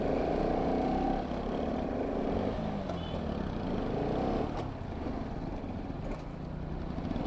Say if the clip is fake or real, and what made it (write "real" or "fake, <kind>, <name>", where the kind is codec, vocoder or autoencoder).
real